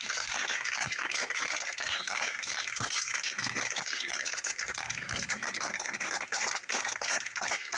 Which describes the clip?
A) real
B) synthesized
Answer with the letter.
B